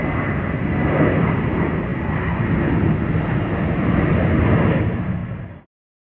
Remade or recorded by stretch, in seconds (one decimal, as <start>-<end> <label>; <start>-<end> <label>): 0.0-6.1 recorded